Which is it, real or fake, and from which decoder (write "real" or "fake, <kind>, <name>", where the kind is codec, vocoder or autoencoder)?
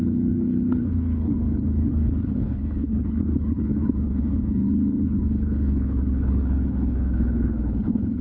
fake, codec, HILCodec